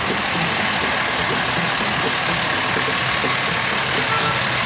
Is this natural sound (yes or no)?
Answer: yes